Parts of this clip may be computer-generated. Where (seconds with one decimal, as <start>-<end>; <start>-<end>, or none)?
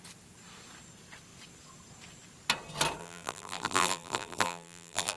3.0-5.2